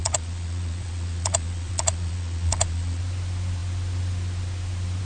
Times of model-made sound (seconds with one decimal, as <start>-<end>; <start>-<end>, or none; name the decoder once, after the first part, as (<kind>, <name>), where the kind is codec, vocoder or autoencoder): 0.0-3.0 (vocoder, Vocos)